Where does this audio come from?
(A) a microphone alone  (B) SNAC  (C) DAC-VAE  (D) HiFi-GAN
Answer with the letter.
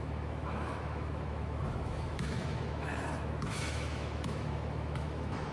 C